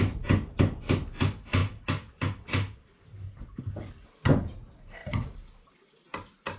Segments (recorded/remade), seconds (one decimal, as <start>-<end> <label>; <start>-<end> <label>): 0.0-6.6 recorded